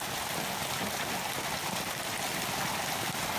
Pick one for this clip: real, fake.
real